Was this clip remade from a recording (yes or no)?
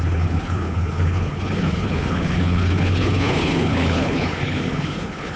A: yes